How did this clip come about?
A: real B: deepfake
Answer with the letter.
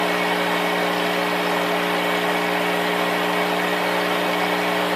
A